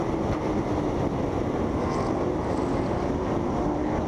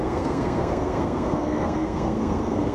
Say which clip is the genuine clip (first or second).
first